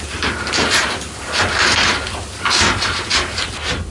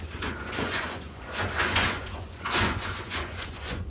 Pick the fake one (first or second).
second